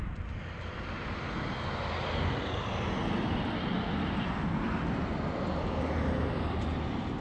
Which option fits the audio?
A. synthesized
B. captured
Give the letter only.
B